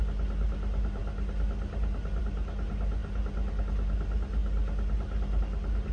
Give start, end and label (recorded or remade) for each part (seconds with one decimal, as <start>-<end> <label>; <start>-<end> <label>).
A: 0.0-5.9 recorded